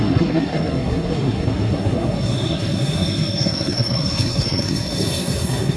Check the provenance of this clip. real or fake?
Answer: fake